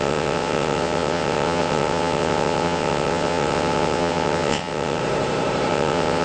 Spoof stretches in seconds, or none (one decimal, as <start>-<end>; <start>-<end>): 0.0-5.0; 5.7-6.2